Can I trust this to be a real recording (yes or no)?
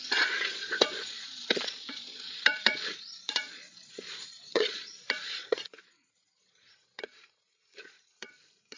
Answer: no